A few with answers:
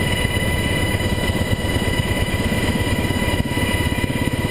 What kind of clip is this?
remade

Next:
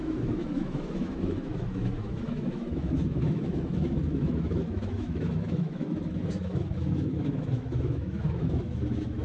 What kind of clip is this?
remade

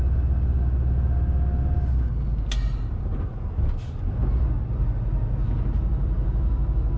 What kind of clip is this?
recorded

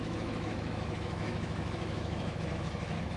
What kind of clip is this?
remade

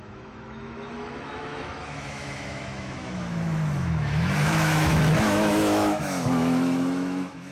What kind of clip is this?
remade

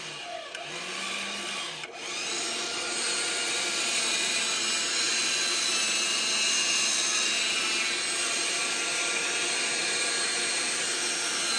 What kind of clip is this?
recorded